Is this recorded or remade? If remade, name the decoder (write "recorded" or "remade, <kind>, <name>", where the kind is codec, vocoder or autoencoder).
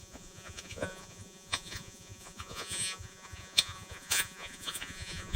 remade, vocoder, Vocos